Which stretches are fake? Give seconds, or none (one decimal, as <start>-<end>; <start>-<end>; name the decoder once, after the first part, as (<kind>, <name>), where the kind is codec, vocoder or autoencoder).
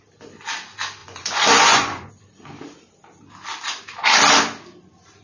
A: 1.0-2.1 (vocoder, Vocos)